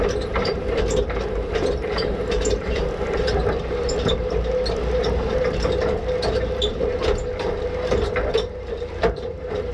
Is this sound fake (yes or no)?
yes